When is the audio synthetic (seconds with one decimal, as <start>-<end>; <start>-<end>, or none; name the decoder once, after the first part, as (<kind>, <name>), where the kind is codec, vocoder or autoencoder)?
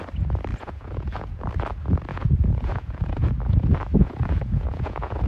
0.5-1.4 (vocoder, Vocos); 2.1-3.3; 4.0-5.3